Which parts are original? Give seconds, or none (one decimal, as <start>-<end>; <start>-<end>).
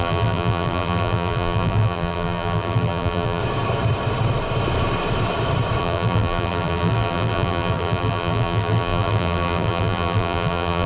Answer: 3.4-5.8